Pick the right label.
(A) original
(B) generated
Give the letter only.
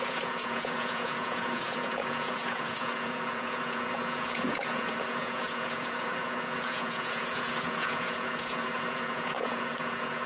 B